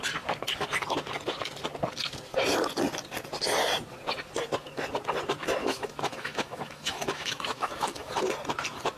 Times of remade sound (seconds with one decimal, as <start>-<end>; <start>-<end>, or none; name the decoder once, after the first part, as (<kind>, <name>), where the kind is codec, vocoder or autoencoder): 5.6-8.1 (autoencoder, DAC-VAE)